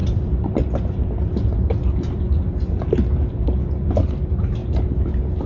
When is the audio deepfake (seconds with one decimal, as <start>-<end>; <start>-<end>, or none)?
0.0-4.6